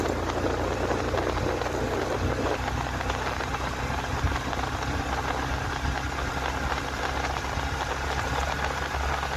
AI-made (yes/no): no